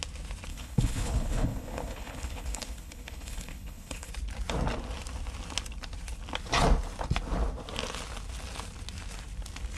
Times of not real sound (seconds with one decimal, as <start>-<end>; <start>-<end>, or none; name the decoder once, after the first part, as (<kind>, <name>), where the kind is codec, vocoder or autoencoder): 0.5-4.1 (codec, HILCodec)